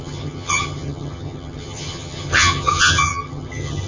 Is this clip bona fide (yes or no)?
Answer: no